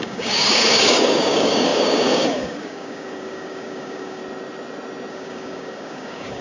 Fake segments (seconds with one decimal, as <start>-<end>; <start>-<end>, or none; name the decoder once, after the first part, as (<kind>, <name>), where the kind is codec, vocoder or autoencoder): 0.0-4.2 (codec, DAC); 5.1-6.4